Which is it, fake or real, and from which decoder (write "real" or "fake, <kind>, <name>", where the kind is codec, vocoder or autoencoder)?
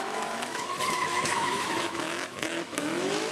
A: fake, autoencoder, DAC-VAE